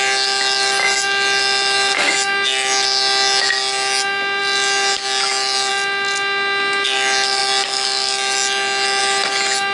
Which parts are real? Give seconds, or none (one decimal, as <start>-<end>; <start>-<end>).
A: 0.0-9.7